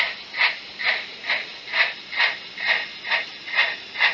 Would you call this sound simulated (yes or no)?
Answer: no